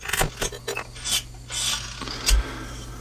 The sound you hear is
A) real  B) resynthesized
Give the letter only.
A